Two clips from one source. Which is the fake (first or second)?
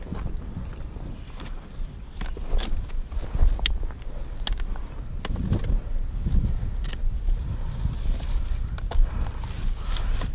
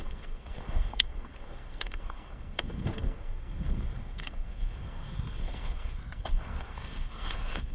second